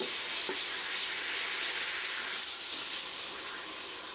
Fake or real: real